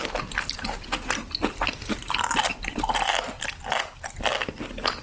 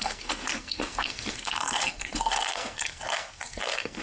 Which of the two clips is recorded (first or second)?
first